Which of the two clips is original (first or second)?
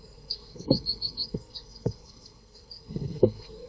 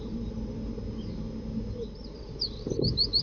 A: second